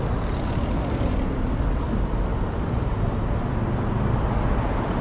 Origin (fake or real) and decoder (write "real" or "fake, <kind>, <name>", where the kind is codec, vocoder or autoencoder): real